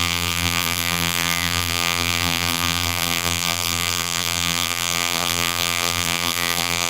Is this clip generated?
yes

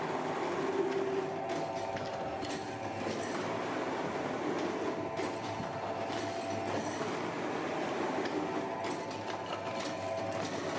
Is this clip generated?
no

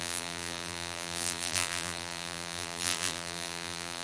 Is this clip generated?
yes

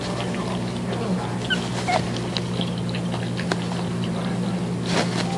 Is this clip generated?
no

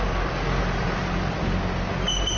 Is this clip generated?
yes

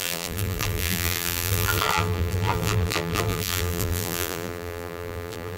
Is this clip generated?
yes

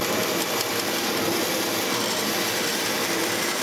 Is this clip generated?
yes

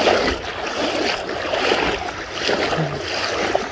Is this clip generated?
no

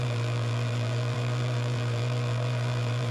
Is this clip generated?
yes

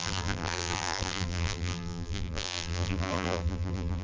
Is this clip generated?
yes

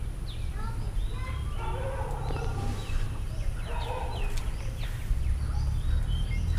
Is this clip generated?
no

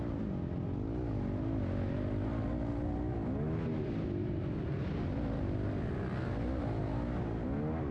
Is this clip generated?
no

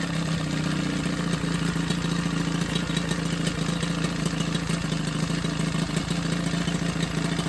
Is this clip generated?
no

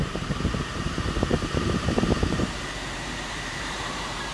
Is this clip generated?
yes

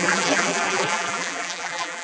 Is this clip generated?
yes